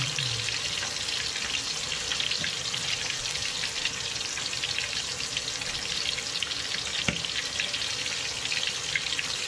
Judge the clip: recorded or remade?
recorded